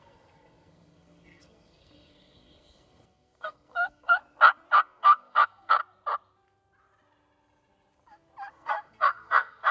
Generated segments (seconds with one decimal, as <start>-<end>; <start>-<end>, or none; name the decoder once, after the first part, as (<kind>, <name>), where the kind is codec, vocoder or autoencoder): 0.0-4.2 (codec, SNAC); 4.8-5.8; 8.5-9.7